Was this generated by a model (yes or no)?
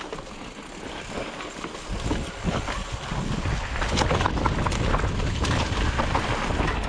no